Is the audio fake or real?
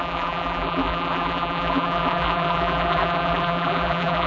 fake